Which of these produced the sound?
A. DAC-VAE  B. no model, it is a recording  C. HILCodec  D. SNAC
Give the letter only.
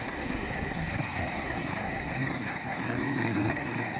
D